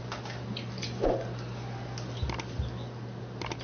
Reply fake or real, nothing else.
real